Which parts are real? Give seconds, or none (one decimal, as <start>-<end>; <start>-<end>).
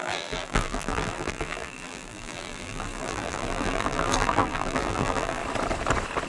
5.4-6.3